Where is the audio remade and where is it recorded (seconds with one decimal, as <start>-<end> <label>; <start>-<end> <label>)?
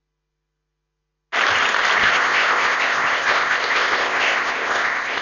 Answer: 0.0-2.0 recorded; 2.0-5.2 remade